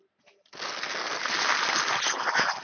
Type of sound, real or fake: real